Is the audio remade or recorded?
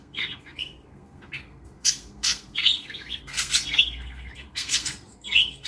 remade